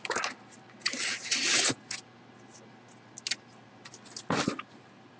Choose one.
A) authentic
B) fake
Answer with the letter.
A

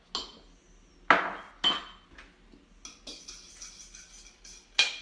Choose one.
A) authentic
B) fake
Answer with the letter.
A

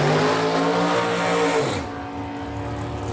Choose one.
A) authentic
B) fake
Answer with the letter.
A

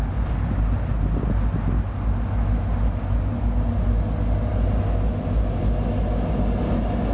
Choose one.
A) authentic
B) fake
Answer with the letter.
A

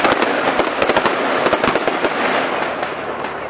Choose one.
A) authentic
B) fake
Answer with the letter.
A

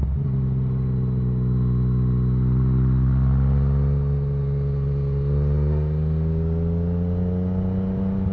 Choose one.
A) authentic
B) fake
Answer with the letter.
A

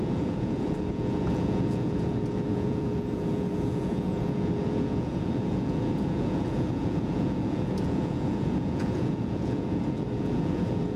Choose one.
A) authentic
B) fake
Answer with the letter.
B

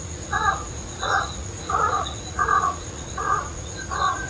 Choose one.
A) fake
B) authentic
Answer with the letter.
A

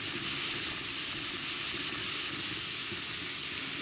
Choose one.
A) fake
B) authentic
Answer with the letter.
B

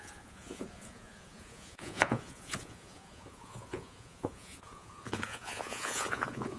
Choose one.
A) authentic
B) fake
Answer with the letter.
B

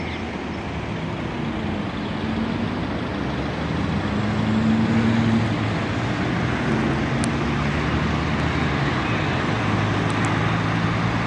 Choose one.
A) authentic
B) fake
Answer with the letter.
A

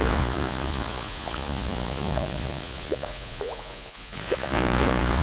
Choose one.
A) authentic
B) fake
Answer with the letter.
B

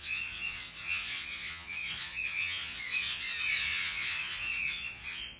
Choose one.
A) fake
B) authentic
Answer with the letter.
A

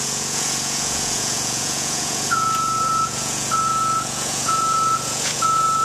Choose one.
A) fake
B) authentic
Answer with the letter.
A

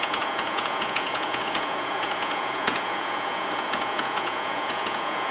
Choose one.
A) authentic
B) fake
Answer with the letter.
B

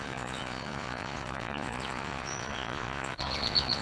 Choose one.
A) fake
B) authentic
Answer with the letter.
A